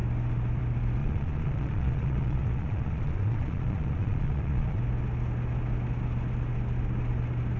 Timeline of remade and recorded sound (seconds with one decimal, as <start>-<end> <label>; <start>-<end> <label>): 0.0-1.0 recorded; 1.0-4.8 remade; 4.8-7.6 recorded